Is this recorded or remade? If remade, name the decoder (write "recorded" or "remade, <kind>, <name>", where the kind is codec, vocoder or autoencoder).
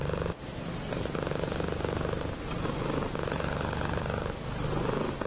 recorded